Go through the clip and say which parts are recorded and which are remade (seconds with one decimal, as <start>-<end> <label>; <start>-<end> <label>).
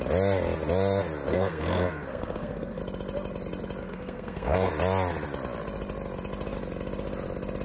0.0-1.3 recorded; 1.3-2.8 remade; 2.8-3.8 recorded; 3.8-4.7 remade; 4.7-7.6 recorded